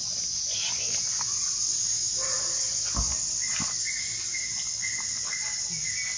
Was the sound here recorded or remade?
recorded